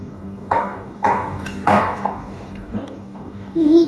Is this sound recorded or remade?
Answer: remade